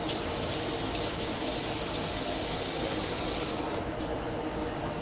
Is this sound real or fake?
real